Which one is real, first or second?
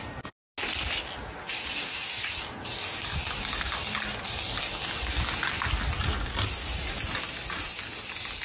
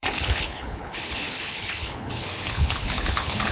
first